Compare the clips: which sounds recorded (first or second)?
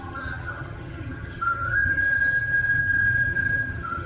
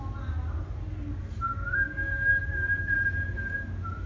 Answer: second